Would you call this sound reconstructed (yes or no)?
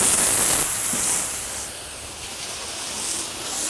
no